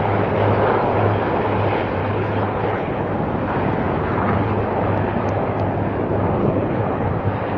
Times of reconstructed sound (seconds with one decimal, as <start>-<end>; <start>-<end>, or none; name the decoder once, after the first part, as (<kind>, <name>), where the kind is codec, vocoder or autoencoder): 2.0-3.1 (codec, HILCodec); 4.0-4.6; 6.4-7.1